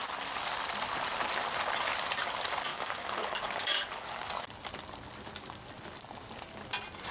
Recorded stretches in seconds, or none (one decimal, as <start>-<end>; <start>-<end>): 0.0-2.7; 4.5-7.1